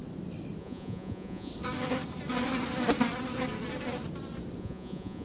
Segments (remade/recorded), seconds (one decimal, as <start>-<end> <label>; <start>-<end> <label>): 0.0-0.6 recorded; 0.6-1.5 remade; 1.5-4.6 recorded; 4.6-5.2 remade